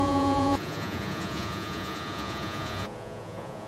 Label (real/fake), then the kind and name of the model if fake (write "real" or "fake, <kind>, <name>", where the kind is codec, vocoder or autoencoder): fake, vocoder, Vocos